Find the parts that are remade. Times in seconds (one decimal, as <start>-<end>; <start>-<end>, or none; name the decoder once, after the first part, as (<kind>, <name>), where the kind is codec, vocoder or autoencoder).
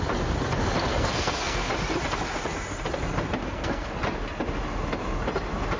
0.9-1.7 (codec, SNAC); 3.4-3.9